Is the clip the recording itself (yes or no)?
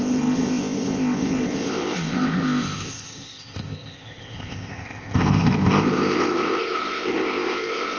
no